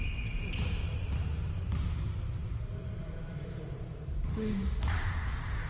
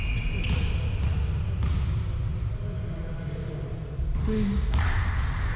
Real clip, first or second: second